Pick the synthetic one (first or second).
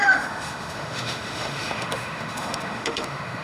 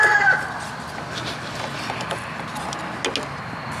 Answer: first